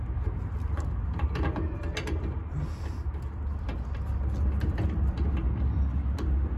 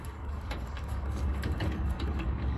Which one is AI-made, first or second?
second